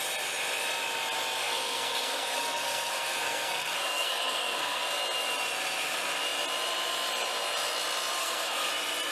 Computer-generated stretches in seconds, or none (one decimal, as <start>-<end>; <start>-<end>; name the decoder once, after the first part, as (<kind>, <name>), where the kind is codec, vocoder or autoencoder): 1.4-4.8 (codec, SNAC); 8.2-8.7

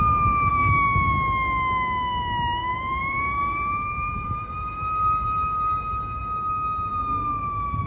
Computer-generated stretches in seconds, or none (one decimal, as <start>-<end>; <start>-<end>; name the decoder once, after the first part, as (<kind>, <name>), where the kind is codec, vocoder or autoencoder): 0.5-1.1 (vocoder, BigVGAN v2); 2.6-6.2

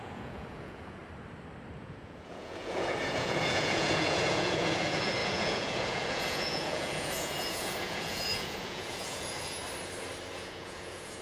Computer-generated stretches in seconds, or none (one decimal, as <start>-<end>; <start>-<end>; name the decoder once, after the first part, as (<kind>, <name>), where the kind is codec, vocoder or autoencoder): 0.0-1.0 (vocoder, Vocos); 1.8-9.6; 10.3-11.2

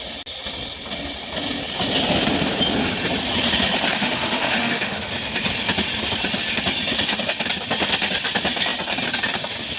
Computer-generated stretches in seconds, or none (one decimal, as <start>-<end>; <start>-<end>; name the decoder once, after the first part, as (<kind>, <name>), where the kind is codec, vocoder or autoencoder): 4.0-5.1 (autoencoder, DAC-VAE)

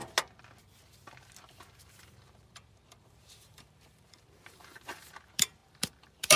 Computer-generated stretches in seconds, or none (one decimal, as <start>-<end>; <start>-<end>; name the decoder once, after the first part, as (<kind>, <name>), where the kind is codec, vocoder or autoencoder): 1.8-6.4 (vocoder, BigVGAN v2)

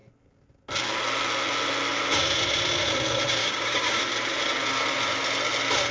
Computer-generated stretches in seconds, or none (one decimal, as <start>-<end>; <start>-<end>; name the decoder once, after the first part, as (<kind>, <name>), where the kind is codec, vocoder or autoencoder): 3.4-4.0 (codec, DAC)

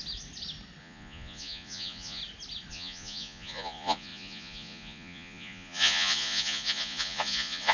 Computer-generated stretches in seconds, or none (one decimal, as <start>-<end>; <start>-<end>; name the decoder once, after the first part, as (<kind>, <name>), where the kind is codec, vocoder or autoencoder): 0.8-2.2 (vocoder, Vocos); 2.7-7.7

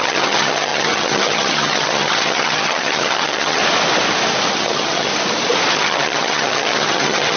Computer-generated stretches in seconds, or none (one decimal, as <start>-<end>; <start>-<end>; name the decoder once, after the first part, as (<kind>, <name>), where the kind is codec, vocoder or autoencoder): 0.0-3.6 (vocoder, HiFi-GAN); 4.5-5.1; 5.7-7.4